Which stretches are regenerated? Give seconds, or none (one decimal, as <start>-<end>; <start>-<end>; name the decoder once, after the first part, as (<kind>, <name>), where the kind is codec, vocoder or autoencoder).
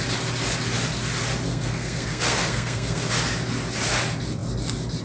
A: 1.5-3.1 (codec, SNAC)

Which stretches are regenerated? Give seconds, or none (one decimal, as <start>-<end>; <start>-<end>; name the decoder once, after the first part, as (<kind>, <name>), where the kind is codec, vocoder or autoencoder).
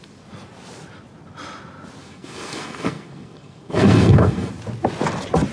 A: 2.0-4.5 (codec, SNAC)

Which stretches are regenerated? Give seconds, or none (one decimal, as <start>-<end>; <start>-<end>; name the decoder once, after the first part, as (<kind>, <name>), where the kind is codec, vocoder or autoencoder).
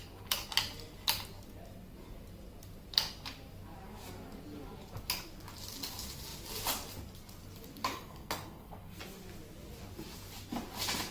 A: 7.9-9.0 (codec, SNAC)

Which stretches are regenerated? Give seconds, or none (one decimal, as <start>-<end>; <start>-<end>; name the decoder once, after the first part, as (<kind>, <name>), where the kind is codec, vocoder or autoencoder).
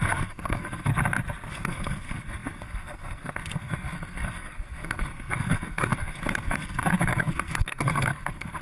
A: 0.0-0.9 (codec, SNAC); 1.5-8.6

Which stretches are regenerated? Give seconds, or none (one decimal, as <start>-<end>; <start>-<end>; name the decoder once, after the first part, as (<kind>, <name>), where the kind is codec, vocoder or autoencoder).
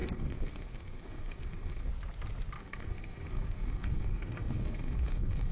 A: 0.0-1.9 (codec, SNAC); 2.6-5.5